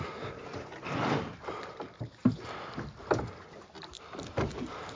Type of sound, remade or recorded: recorded